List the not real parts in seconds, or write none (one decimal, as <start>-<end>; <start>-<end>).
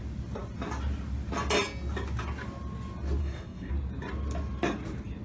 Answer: 3.2-3.7